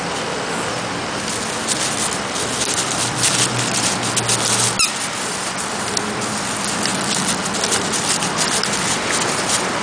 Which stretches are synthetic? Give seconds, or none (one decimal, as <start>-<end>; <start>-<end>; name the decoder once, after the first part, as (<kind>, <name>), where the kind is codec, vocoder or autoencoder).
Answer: none